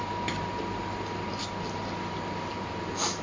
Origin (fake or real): real